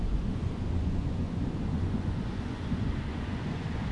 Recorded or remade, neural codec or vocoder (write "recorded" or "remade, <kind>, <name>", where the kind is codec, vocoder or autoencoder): remade, vocoder, Vocos